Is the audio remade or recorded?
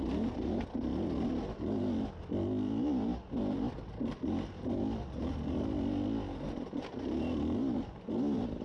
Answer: recorded